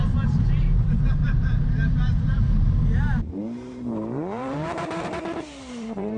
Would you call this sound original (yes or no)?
no